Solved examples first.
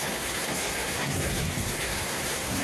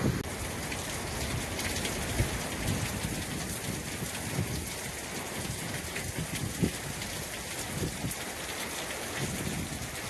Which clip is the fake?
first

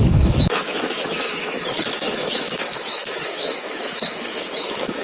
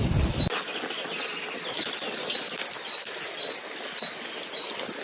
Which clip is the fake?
first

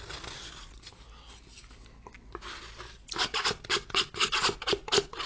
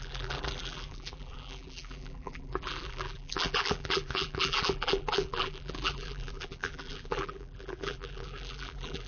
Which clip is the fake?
second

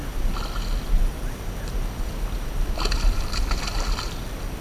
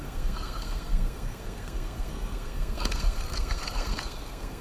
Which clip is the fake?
second